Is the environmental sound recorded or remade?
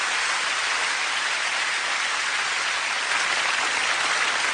recorded